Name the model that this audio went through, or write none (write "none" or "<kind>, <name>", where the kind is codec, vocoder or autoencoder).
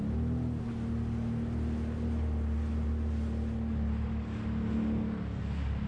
none